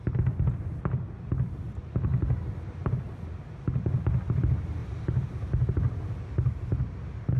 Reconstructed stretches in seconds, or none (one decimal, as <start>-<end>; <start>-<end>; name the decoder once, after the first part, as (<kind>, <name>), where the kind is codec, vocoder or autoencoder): 4.8-6.5 (vocoder, BigVGAN v2)